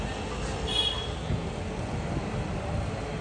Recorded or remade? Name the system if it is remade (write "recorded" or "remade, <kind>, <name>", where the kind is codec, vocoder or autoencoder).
recorded